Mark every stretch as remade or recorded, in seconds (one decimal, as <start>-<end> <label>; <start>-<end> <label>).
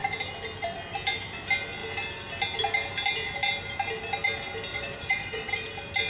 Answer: 0.0-4.7 recorded; 4.7-5.5 remade; 5.5-6.1 recorded